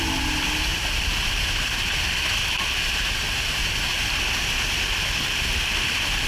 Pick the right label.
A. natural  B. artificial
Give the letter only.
A